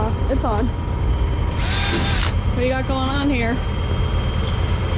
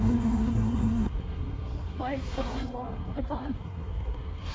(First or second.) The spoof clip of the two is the second